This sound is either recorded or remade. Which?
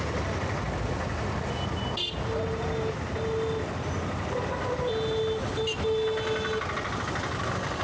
recorded